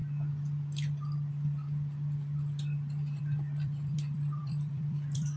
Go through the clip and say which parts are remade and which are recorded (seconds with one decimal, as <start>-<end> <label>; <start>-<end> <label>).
0.0-3.2 recorded; 3.2-5.4 remade